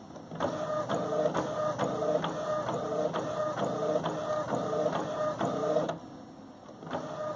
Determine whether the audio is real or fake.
real